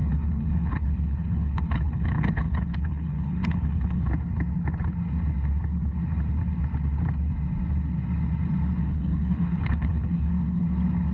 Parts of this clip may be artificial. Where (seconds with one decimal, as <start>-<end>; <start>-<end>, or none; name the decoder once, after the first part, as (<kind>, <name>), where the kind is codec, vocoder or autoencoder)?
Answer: 0.0-4.1 (codec, HILCodec); 8.8-10.3